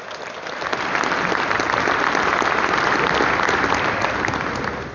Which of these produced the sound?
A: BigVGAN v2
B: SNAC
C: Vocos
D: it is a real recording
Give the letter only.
D